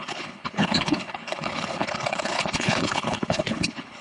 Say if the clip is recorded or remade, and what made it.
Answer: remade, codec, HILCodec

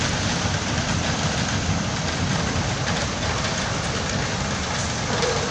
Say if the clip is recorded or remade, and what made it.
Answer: recorded